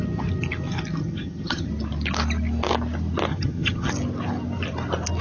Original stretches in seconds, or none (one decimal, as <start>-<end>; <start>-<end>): 0.0-1.0; 1.7-3.3; 3.9-5.2